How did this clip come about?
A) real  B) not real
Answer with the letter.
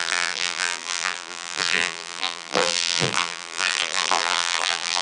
B